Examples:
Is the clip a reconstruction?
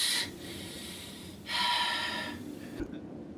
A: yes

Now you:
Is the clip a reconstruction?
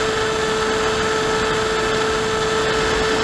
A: no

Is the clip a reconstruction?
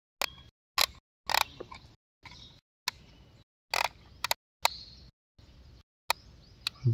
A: no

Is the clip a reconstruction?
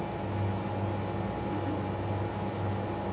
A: no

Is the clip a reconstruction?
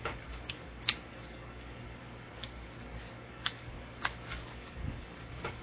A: yes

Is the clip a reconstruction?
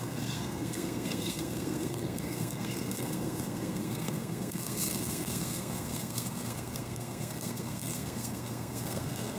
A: yes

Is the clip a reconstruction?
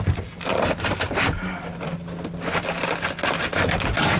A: no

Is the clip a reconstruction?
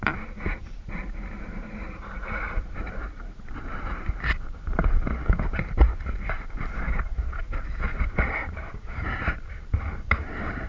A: yes